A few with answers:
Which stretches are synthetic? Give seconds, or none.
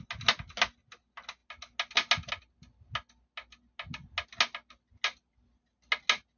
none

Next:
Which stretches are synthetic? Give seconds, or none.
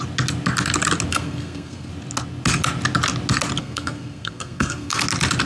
1.1-1.9 (codec, SNAC); 3.6-5.0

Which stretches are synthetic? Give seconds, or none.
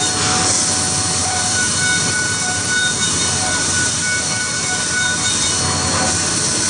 1.2-5.2 (vocoder, BigVGAN v2)